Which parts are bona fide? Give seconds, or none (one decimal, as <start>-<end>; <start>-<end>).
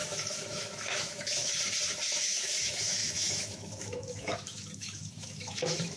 1.5-2.1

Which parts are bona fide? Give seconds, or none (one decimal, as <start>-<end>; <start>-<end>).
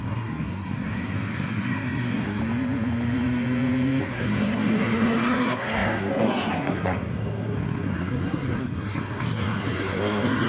2.4-4.0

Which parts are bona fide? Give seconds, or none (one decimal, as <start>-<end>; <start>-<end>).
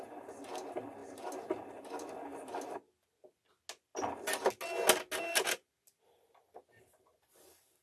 0.0-7.8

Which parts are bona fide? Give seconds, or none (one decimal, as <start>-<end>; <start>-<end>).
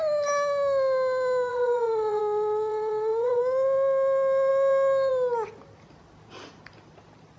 0.0-1.5; 2.2-2.7; 3.4-7.4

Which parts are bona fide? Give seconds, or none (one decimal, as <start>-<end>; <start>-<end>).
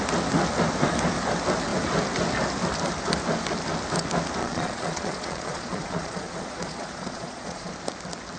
0.0-4.4; 7.7-8.4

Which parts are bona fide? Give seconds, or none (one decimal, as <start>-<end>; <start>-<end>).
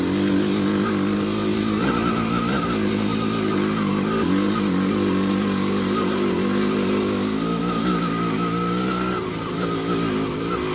0.0-10.7